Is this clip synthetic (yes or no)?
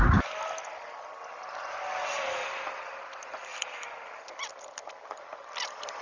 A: no